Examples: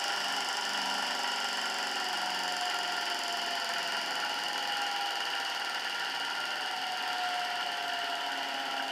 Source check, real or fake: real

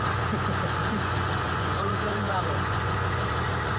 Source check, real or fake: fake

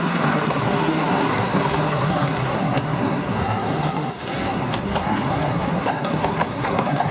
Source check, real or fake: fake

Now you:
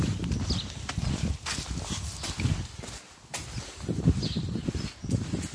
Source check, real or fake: real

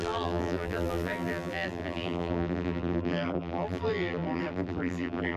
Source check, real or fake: fake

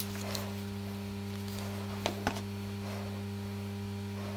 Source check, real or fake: real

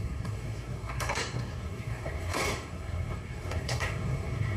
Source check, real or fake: fake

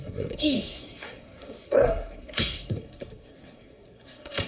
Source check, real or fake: fake